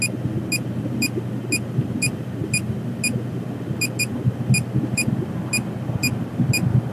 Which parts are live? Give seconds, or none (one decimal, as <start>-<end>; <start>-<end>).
0.0-6.9